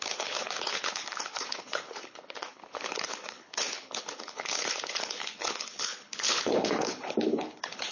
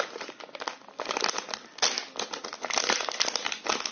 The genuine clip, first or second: second